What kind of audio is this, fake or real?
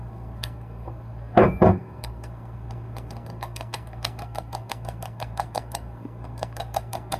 fake